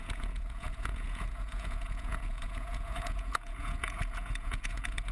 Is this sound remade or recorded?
remade